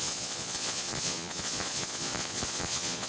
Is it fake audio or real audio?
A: fake